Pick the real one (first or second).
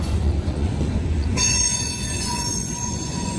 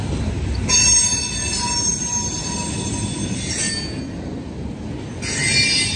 second